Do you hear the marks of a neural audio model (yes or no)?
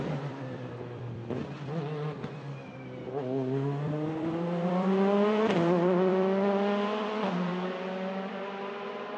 yes